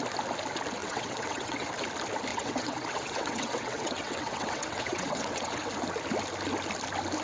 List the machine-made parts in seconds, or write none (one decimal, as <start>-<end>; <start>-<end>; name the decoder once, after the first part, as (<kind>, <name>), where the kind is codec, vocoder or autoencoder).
0.8-1.7 (vocoder, WaveNeXt); 2.3-5.6